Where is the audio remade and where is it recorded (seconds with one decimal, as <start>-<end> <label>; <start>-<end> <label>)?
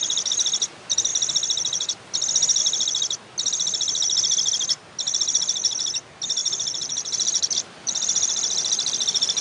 0.0-6.4 recorded; 6.4-9.4 remade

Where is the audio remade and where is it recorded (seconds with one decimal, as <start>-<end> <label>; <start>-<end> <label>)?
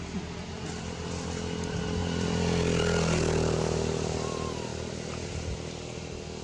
0.0-2.0 recorded; 2.0-2.8 remade; 2.8-6.4 recorded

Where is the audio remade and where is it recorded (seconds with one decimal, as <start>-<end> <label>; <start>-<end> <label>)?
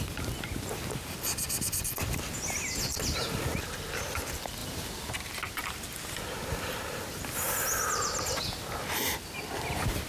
0.0-10.1 recorded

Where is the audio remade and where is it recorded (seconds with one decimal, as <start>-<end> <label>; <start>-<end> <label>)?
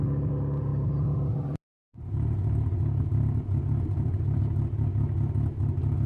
0.0-0.7 recorded; 0.7-4.4 remade; 4.4-6.1 recorded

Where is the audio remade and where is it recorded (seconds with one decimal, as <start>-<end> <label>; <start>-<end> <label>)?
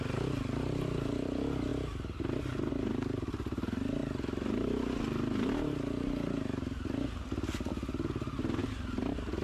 0.0-9.4 recorded